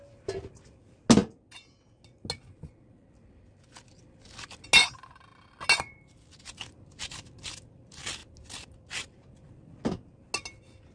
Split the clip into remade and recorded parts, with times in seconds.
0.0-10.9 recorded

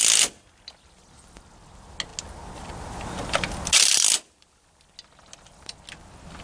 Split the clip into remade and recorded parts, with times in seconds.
0.0-6.4 recorded

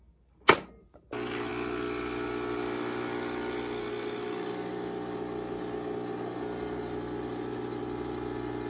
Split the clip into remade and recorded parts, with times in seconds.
0.0-8.7 recorded